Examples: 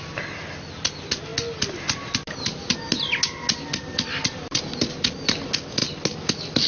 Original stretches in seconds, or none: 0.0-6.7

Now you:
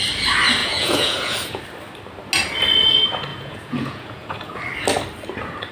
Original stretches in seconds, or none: 0.0-0.6; 1.6-3.3; 4.6-5.7

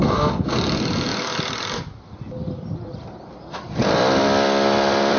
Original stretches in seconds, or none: none

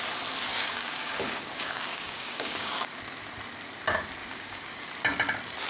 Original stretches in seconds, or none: 0.0-0.5; 3.0-4.2; 4.9-5.7